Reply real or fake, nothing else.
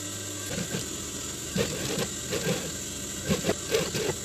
real